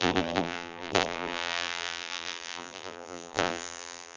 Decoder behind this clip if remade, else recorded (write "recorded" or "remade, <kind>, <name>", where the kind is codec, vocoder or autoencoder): remade, vocoder, BigVGAN v2